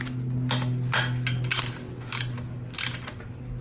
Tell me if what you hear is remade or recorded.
recorded